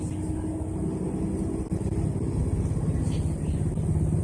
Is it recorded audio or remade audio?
recorded